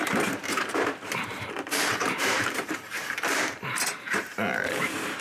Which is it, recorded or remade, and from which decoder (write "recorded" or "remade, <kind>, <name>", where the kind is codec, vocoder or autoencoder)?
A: remade, vocoder, BigVGAN v2